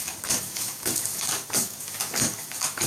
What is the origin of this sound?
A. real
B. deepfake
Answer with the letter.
B